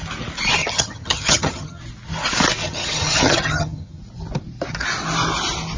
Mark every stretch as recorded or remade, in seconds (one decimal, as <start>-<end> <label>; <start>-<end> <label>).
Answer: 0.0-0.6 recorded; 0.6-1.8 remade; 1.8-2.6 recorded; 2.6-4.0 remade; 4.0-5.8 recorded